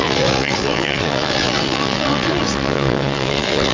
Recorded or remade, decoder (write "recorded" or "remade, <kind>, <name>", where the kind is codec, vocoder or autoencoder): remade, vocoder, WaveNeXt